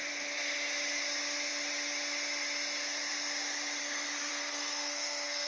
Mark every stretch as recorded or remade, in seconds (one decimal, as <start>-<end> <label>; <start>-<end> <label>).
0.0-4.3 recorded; 4.3-5.5 remade